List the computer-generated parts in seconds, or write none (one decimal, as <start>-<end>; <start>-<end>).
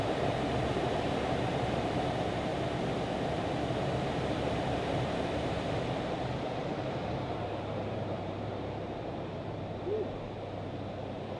0.0-2.5; 3.2-11.4